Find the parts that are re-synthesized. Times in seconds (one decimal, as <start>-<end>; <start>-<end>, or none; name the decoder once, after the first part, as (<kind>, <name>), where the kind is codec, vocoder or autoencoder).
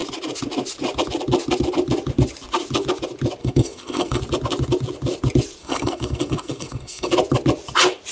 3.4-4.2 (codec, SNAC); 5.6-7.1